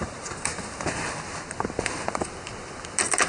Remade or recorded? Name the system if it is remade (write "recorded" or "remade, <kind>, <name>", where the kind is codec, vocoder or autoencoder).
recorded